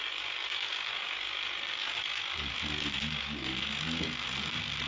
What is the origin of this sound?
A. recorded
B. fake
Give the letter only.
A